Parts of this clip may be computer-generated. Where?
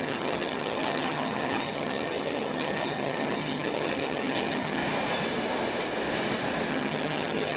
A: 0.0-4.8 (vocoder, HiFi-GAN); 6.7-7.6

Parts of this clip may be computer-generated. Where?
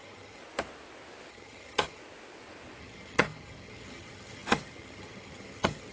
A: 0.0-0.4 (vocoder, HiFi-GAN); 1.3-2.0; 2.8-5.9